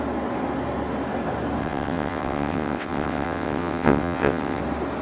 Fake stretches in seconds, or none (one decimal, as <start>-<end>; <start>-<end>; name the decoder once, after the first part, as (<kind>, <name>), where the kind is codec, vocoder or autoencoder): 1.6-4.6 (vocoder, WaveNeXt)